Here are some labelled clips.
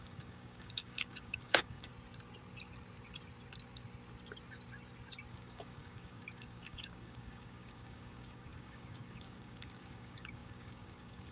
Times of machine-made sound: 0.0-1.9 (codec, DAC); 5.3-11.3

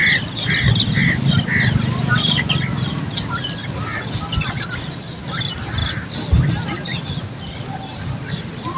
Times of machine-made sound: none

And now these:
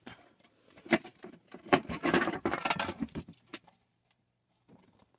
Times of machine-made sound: 0.0-5.2 (vocoder, BigVGAN v2)